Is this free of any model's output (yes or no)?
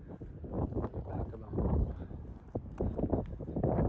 yes